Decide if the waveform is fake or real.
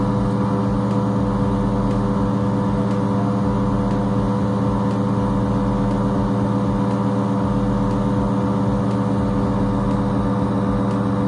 real